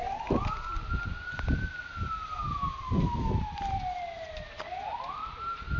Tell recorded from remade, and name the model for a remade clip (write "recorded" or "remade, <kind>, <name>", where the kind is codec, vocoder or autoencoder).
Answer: recorded